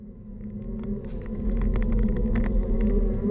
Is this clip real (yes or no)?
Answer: yes